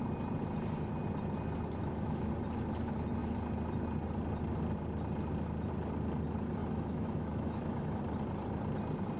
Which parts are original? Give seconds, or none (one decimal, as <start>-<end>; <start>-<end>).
0.0-1.8; 2.3-6.6; 8.0-9.2